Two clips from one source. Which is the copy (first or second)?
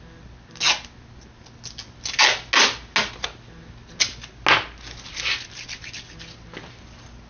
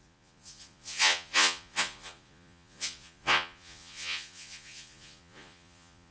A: second